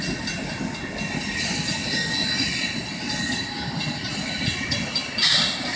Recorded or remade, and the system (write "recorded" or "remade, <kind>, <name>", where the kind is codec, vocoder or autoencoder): recorded